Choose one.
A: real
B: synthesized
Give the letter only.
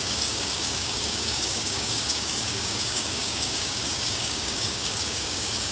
B